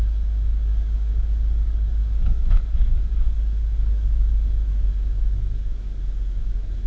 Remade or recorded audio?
remade